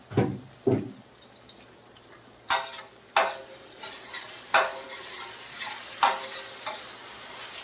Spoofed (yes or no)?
no